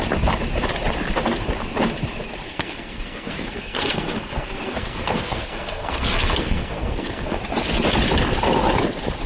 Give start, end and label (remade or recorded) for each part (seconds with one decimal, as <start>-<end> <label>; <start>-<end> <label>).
0.0-2.5 recorded; 2.5-7.4 remade; 7.4-9.3 recorded